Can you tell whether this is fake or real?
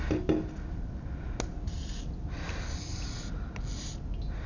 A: real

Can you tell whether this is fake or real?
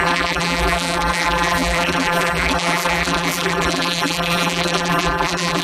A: fake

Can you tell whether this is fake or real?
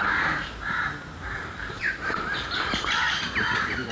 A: fake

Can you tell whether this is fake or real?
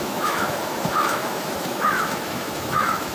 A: fake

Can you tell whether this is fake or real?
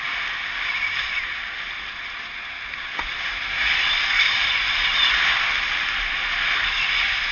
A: real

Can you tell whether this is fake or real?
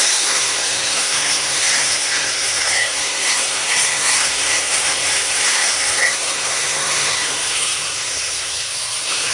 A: fake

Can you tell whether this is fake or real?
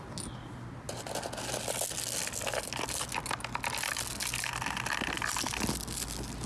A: real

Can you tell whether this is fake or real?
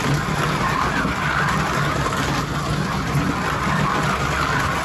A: real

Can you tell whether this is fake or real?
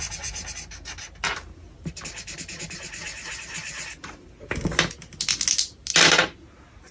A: real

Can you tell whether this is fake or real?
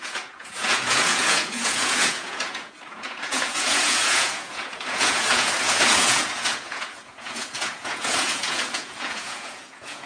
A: fake